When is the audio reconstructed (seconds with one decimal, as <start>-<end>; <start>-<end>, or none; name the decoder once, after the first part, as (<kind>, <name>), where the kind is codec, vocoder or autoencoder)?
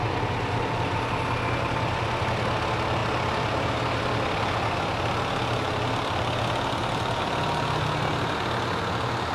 none